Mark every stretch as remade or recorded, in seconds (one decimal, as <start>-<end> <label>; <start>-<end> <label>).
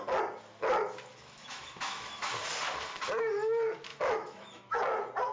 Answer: 0.0-1.1 recorded; 1.1-2.3 remade; 2.3-3.9 recorded; 3.9-4.7 remade; 4.7-5.3 recorded